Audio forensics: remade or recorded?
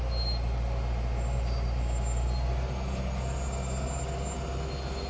recorded